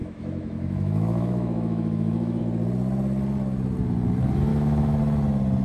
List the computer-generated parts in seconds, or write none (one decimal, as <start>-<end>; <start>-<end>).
0.0-2.4; 4.5-5.0